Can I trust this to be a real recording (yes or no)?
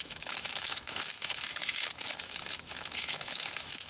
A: no